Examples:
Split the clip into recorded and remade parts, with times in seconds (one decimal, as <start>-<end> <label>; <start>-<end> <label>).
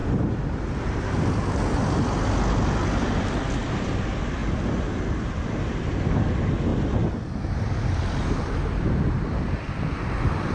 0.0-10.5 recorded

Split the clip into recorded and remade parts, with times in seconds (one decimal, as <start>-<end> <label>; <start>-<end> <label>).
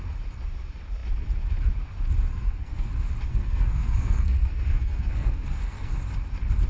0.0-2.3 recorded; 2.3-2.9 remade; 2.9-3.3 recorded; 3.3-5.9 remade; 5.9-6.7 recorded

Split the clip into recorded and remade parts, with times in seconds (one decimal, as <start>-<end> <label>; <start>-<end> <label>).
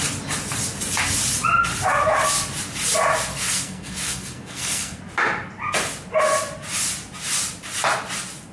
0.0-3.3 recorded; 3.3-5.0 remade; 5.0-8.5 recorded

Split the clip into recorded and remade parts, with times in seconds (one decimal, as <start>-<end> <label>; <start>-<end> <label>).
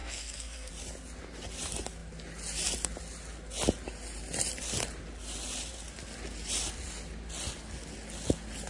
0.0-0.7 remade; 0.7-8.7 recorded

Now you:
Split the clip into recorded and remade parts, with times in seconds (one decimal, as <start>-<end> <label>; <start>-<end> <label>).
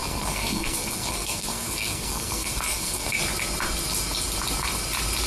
0.0-3.2 remade; 3.2-5.3 recorded